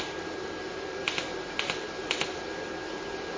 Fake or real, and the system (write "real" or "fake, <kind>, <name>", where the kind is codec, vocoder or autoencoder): real